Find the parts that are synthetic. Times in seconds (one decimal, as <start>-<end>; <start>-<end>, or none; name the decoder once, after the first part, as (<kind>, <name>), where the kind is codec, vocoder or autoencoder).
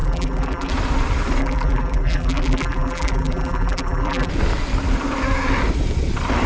0.0-0.7 (vocoder, BigVGAN v2); 1.4-4.3